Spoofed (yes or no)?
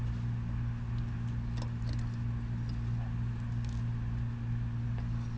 no